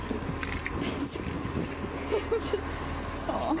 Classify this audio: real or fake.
real